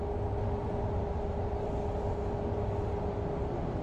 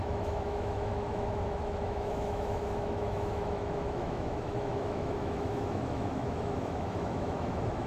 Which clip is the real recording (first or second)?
first